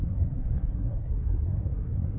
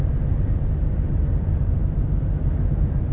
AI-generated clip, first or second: first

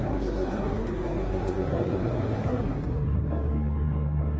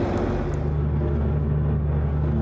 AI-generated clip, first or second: first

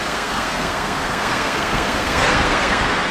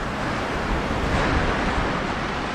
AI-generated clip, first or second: first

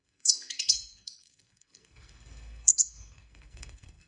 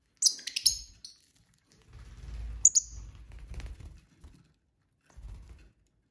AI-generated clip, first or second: first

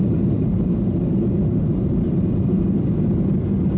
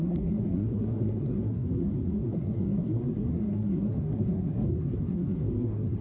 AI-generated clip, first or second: second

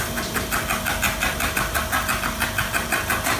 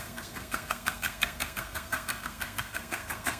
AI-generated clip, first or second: second